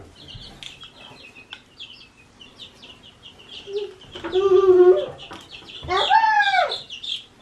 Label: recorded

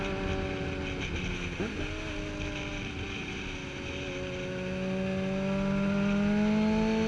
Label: recorded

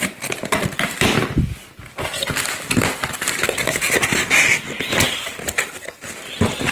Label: recorded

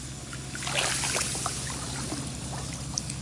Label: recorded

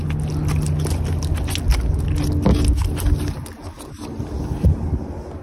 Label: recorded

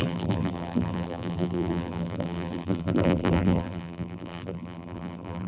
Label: remade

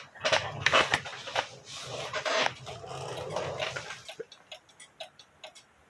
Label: recorded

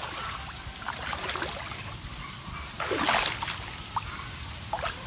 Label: recorded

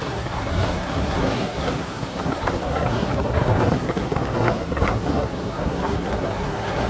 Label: remade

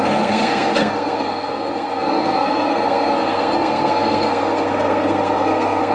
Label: remade